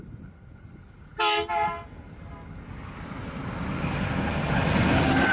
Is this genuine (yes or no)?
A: yes